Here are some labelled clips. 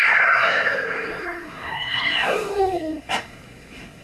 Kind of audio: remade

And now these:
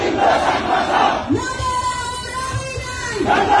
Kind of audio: recorded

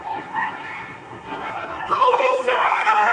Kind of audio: remade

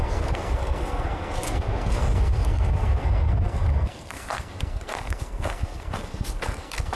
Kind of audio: remade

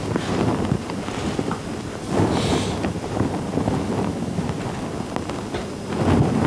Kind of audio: recorded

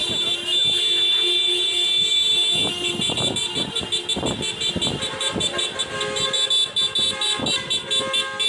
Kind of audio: recorded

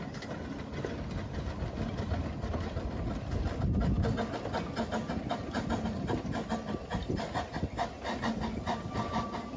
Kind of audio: recorded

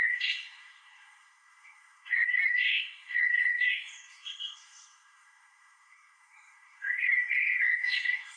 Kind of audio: remade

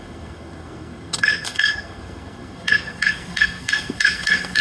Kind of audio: remade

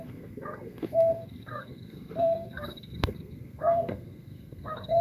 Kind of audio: remade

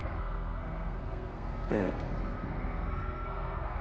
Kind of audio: remade